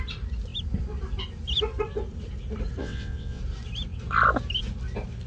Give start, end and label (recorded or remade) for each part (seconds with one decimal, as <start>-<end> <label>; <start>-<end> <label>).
0.0-2.8 recorded; 2.8-3.4 remade; 3.4-5.3 recorded